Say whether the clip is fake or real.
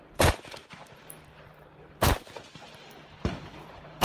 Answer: fake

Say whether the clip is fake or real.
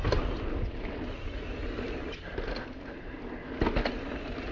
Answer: real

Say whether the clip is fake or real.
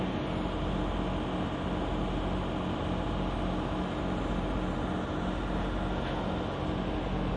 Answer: real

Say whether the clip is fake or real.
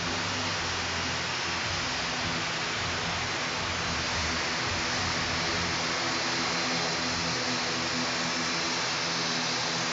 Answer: real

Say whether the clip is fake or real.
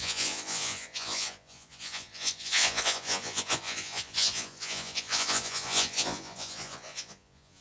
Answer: fake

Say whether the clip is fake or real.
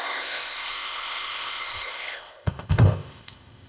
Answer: fake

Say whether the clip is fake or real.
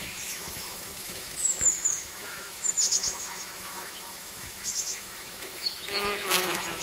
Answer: fake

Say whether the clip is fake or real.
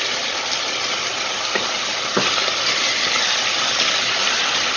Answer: real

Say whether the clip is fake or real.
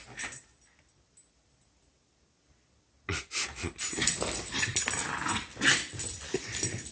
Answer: real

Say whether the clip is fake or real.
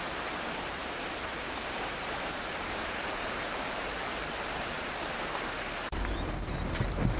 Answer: fake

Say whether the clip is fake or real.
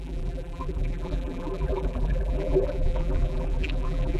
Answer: fake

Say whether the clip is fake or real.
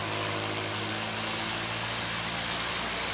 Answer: real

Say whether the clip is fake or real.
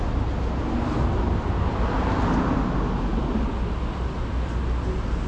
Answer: real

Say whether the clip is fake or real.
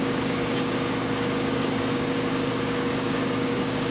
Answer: fake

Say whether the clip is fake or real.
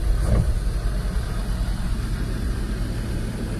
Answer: real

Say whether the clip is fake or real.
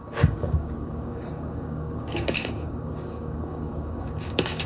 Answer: fake